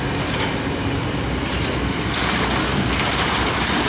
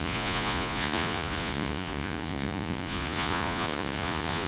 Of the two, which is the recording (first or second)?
first